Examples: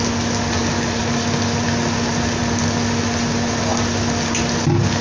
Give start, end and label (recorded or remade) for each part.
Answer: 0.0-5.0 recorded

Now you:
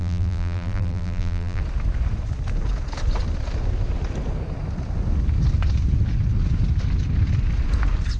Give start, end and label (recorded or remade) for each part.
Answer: 0.0-1.6 remade; 1.6-8.2 recorded

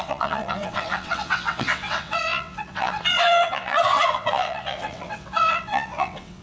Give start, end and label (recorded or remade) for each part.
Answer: 0.0-6.4 remade

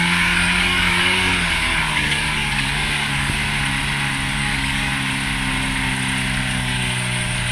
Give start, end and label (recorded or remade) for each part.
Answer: 0.0-3.4 remade; 3.4-4.3 recorded; 4.3-4.9 remade; 4.9-6.4 recorded; 6.4-7.5 remade

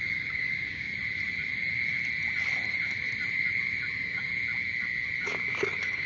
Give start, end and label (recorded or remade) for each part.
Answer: 0.0-0.9 remade; 0.9-3.9 recorded; 3.9-4.3 remade; 4.3-5.2 recorded; 5.2-6.1 remade

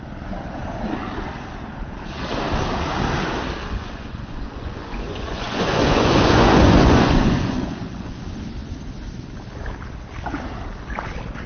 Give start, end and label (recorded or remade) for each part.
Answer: 0.0-3.6 recorded; 3.6-8.2 remade; 8.2-11.5 recorded